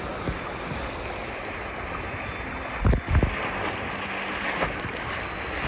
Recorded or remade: recorded